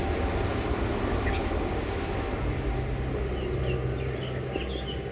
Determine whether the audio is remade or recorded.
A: recorded